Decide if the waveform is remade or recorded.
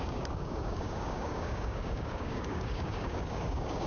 remade